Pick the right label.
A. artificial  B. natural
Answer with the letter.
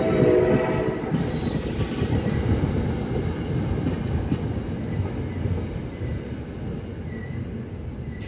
B